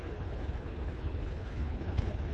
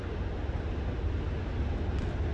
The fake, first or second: first